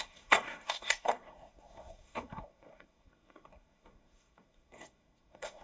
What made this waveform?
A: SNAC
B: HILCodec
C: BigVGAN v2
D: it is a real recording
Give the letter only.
A